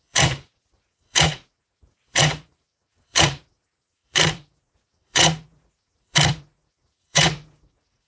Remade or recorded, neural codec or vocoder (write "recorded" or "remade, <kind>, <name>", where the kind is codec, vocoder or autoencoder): remade, vocoder, Vocos